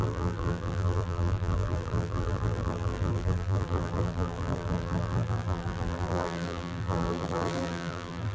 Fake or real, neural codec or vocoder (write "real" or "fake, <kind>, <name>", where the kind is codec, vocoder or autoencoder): fake, vocoder, BigVGAN v2